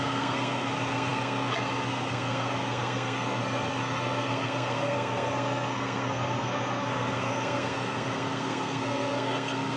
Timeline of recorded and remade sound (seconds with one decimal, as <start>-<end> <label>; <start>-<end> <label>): 0.0-9.8 remade